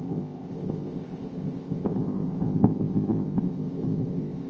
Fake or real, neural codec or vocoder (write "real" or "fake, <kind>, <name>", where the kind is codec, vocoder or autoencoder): fake, codec, ZipCodec